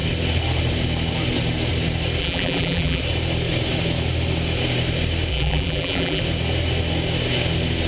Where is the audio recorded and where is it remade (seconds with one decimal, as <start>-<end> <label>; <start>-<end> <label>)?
0.0-2.2 recorded; 2.2-3.0 remade; 3.0-5.3 recorded; 5.3-6.2 remade; 6.2-7.9 recorded